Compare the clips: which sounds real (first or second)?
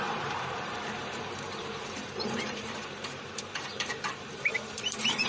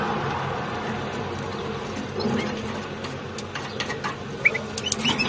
second